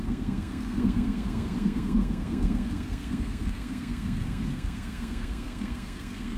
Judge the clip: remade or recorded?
remade